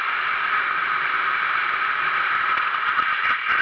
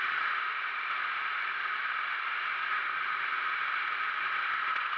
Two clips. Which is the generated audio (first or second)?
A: first